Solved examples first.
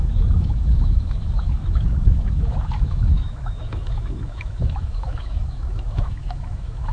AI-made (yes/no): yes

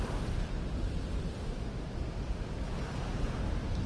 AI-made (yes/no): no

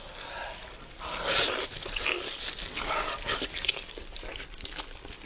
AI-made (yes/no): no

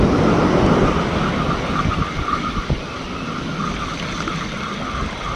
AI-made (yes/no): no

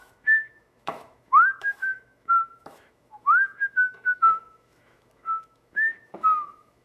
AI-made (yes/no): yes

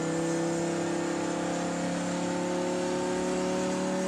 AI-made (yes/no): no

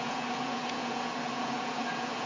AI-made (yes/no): yes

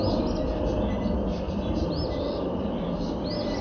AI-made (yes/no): no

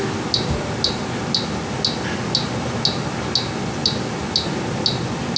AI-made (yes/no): no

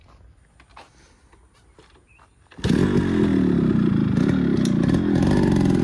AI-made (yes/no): no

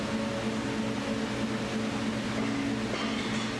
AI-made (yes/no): no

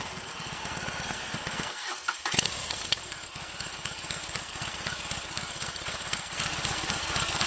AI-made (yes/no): yes